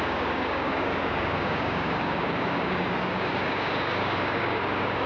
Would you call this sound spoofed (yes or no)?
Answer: yes